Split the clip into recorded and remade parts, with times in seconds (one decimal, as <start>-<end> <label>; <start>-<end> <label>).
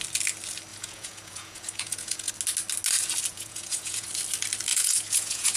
0.0-0.7 recorded; 0.7-2.3 remade; 2.3-3.3 recorded; 3.3-4.1 remade; 4.1-4.7 recorded; 4.7-5.6 remade